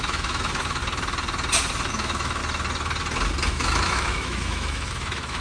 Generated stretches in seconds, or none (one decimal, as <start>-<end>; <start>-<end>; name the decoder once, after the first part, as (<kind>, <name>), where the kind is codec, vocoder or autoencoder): 0.0-0.8 (autoencoder, DAC-VAE); 1.9-2.4; 3.5-5.4